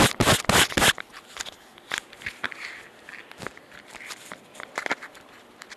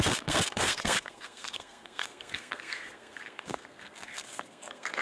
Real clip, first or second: first